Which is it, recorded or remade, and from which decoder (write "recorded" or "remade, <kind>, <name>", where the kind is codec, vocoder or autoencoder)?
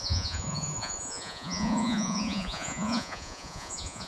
remade, vocoder, Vocos